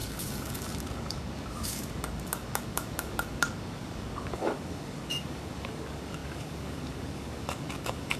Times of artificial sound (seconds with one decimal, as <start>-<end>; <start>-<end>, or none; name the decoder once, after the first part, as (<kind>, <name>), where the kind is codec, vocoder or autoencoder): 0.0-8.2 (codec, DAC)